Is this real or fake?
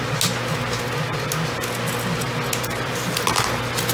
real